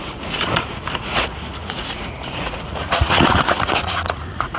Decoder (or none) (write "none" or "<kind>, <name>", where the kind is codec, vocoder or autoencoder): vocoder, Vocos